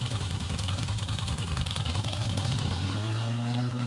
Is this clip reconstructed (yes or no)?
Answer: yes